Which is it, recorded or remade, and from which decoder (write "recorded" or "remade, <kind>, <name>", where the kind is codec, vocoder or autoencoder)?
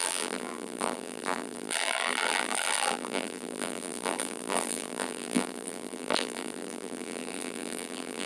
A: remade, vocoder, BigVGAN v2